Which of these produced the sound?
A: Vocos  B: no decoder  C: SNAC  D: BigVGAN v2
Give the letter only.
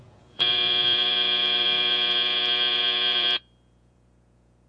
A